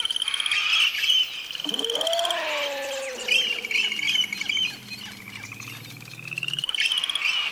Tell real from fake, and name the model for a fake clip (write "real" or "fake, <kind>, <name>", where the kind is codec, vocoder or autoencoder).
real